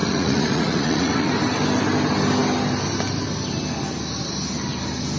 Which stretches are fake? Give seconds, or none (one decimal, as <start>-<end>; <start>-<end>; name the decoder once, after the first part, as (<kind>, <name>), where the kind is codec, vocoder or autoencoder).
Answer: 0.0-1.3 (vocoder, Vocos)